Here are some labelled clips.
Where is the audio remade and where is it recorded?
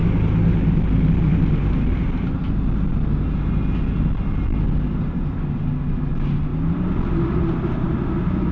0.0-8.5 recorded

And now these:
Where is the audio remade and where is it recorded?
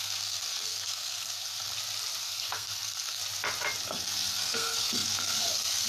0.0-1.7 remade; 1.7-2.2 recorded; 2.2-3.2 remade; 3.2-3.9 recorded; 3.9-5.9 remade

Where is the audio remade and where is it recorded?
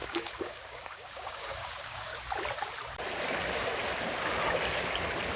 0.0-2.1 remade; 2.1-5.4 recorded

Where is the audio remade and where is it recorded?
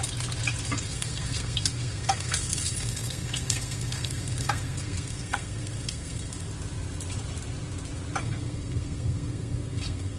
0.0-0.8 recorded; 0.8-6.5 remade; 6.5-8.2 recorded; 8.2-10.2 remade